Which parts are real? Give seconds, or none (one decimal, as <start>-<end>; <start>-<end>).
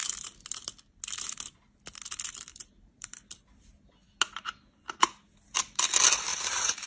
0.0-2.5; 3.2-6.3